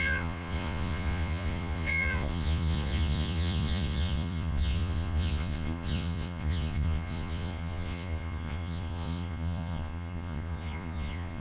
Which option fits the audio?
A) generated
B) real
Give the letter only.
A